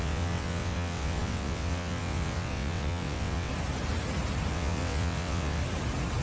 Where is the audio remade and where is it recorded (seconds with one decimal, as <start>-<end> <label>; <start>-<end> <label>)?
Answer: 0.0-3.5 remade; 3.5-4.5 recorded; 4.5-5.6 remade; 5.6-6.2 recorded